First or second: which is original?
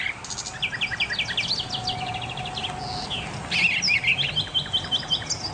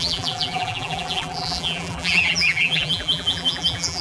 first